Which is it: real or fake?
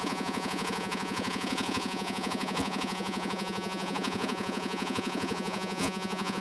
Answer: fake